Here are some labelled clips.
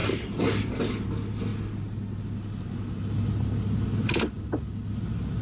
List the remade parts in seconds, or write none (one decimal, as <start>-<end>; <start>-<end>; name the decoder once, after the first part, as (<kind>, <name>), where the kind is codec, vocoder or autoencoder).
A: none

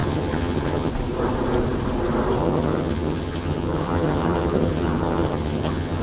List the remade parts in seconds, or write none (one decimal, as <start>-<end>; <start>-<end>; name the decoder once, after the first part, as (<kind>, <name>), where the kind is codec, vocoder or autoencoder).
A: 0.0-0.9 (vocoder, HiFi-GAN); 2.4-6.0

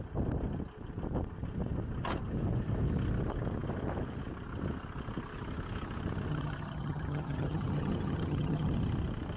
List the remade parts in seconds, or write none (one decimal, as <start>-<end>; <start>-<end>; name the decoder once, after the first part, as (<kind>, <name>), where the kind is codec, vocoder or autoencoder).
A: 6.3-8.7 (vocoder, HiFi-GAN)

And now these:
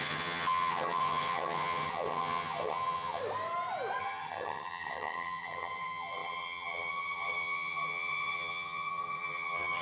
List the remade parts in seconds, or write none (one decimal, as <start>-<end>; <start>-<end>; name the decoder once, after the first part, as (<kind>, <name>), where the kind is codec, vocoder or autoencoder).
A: 0.0-3.2 (vocoder, HiFi-GAN); 4.0-9.8

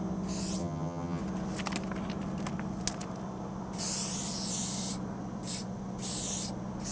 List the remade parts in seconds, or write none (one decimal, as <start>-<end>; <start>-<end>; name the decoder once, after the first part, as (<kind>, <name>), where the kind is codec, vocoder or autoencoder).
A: 0.6-1.2 (vocoder, HiFi-GAN)